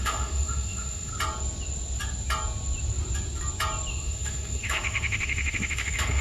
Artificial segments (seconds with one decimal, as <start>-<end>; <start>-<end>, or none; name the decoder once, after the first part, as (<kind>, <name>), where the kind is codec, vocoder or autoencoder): 0.0-1.1 (autoencoder, DAC-VAE); 3.9-6.2